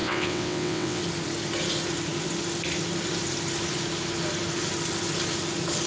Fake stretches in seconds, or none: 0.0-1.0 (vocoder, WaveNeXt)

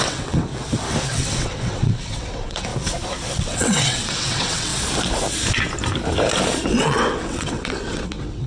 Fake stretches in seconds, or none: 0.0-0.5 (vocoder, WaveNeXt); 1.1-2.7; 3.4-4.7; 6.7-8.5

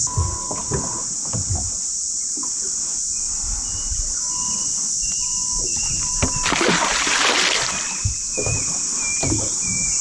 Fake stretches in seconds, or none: none

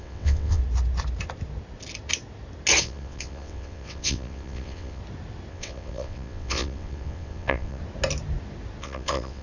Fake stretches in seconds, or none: 0.0-0.6 (vocoder, WaveNeXt); 2.8-5.0; 5.5-7.8; 8.8-9.4